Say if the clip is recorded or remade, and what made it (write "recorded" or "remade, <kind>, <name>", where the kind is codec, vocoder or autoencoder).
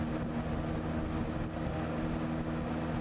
recorded